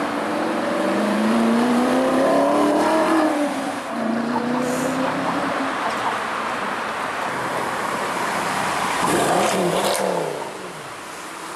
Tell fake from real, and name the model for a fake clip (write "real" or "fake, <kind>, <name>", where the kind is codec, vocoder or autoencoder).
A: fake, vocoder, BigVGAN v2